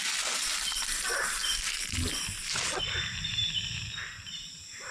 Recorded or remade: recorded